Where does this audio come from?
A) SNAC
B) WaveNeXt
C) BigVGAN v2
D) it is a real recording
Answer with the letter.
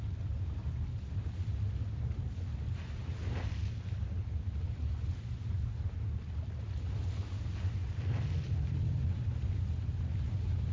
D